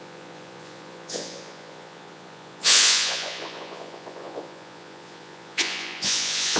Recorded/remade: remade